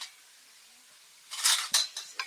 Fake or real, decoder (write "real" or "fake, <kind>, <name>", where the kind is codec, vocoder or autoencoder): fake, vocoder, BigVGAN v2